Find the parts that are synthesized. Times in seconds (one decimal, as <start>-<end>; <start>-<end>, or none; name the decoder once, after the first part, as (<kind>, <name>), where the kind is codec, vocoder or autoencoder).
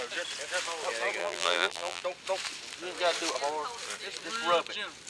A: 1.2-2.0 (vocoder, BigVGAN v2)